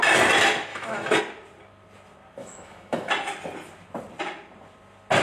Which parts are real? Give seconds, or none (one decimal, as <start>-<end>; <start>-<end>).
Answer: 0.0-0.7; 1.2-2.4; 3.1-5.2